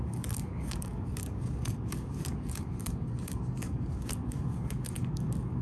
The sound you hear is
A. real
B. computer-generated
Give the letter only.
B